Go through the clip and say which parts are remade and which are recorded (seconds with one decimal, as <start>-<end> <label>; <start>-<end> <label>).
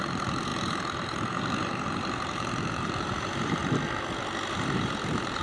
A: 0.0-3.6 remade; 3.6-4.5 recorded; 4.5-5.4 remade